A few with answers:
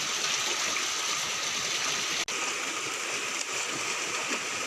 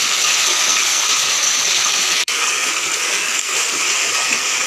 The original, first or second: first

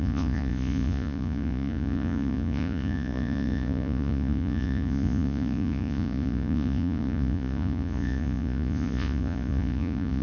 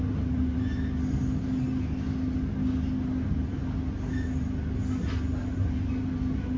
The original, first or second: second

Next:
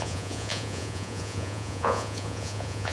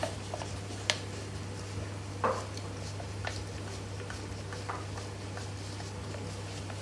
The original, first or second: second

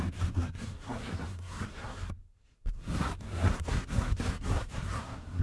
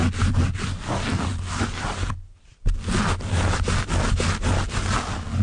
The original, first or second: second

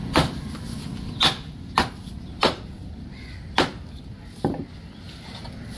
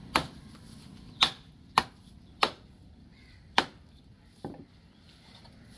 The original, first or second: first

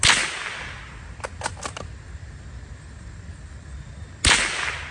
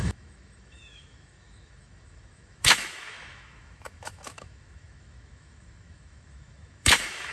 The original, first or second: first